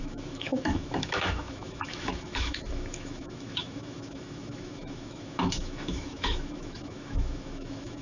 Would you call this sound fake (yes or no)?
yes